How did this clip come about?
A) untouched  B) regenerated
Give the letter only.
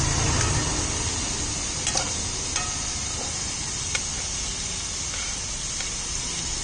A